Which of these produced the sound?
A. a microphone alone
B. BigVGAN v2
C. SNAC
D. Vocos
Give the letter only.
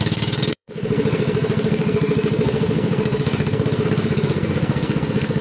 C